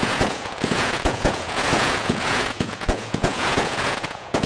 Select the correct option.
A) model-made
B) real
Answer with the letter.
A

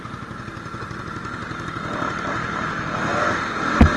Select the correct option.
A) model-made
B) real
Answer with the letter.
B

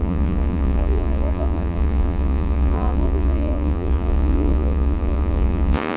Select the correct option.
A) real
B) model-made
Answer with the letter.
B